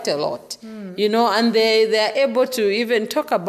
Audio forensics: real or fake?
real